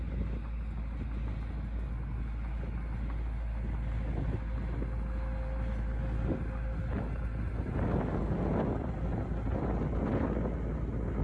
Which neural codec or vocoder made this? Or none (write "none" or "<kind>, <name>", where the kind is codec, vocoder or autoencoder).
none